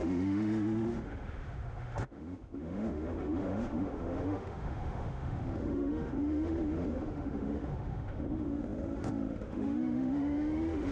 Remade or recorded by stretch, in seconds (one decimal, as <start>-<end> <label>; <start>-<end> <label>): 0.0-10.9 remade